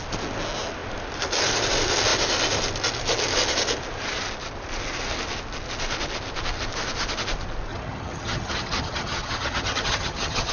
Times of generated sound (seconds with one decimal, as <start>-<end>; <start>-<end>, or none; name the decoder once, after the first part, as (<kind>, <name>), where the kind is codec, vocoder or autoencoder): 7.7-10.5 (vocoder, HiFi-GAN)